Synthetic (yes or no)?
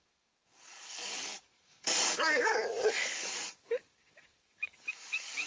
yes